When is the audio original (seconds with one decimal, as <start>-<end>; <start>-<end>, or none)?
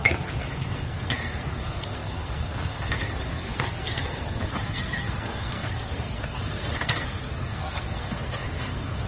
none